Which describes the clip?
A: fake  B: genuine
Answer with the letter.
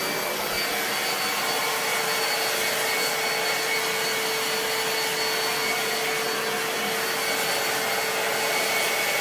B